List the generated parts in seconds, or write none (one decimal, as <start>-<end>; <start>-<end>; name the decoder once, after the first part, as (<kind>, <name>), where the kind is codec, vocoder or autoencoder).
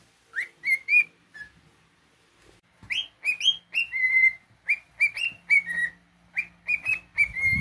0.0-0.9 (vocoder, BigVGAN v2); 4.9-7.6